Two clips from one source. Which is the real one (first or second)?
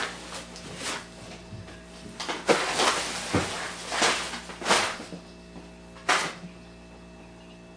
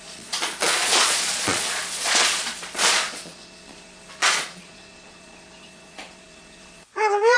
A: first